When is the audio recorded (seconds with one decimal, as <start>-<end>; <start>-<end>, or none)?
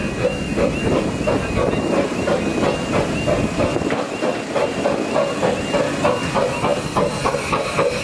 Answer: 0.0-8.0